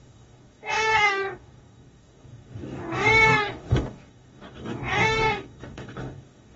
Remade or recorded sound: remade